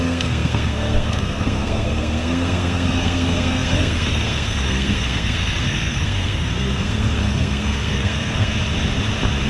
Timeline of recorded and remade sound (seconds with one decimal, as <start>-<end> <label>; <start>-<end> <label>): 0.0-8.5 remade; 8.5-9.5 recorded